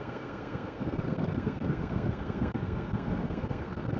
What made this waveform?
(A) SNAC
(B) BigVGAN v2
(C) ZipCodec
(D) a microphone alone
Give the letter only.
A